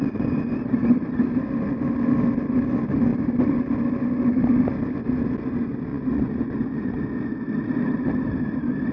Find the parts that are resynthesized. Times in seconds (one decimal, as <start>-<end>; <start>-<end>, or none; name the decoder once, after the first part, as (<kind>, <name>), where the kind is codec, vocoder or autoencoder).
5.9-7.0 (vocoder, Vocos)